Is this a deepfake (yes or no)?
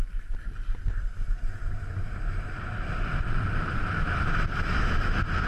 no